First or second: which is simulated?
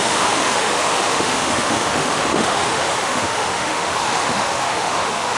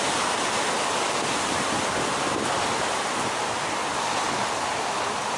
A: first